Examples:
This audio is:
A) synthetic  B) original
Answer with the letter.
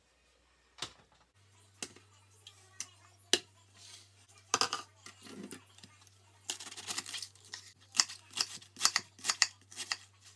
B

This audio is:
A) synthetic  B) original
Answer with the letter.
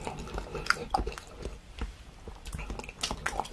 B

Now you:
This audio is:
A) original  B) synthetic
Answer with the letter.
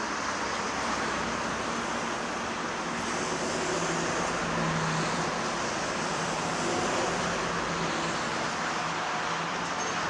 A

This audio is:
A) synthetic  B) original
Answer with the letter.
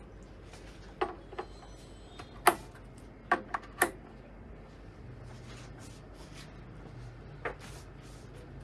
B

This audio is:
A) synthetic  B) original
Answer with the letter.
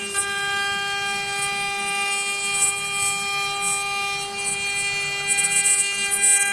B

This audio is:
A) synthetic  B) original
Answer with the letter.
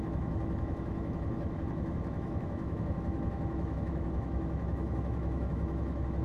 A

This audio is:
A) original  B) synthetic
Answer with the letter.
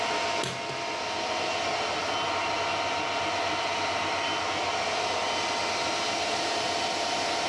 A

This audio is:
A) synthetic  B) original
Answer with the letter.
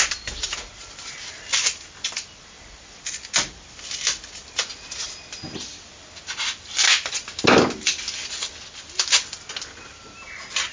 B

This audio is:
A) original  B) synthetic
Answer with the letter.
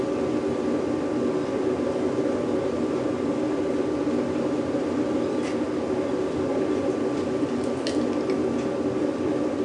A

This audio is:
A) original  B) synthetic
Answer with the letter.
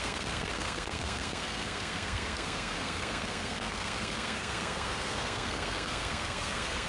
B